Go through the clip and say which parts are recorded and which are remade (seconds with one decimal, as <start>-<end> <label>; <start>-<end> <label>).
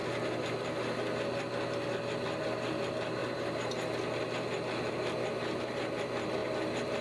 0.0-7.0 recorded